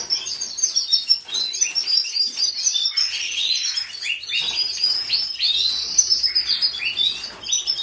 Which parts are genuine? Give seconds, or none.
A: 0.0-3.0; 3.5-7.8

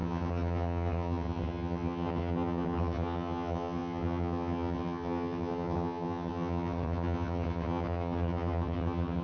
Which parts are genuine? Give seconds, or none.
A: none

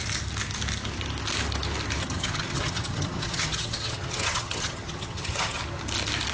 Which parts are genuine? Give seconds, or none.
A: 0.0-2.0; 5.6-6.3